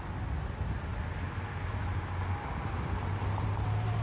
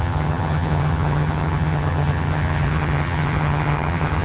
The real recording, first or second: first